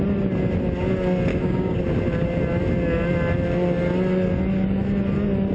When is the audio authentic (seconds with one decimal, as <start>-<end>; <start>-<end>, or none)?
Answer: 0.0-1.3; 1.8-5.5